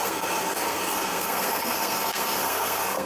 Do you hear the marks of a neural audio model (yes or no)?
yes